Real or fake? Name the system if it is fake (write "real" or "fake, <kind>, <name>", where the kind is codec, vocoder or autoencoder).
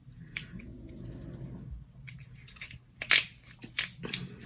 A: real